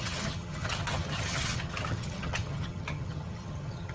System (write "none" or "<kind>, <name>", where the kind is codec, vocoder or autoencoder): vocoder, HiFi-GAN